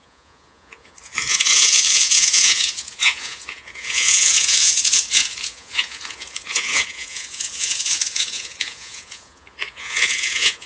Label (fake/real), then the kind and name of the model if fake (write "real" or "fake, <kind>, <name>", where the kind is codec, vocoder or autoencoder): fake, vocoder, Vocos